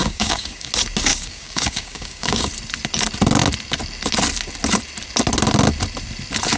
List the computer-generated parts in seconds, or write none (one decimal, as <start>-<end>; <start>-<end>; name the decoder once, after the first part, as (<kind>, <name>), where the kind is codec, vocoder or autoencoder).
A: 0.0-0.7 (codec, DAC); 1.1-2.5